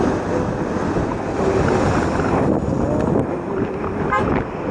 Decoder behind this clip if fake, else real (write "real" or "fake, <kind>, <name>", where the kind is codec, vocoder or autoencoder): real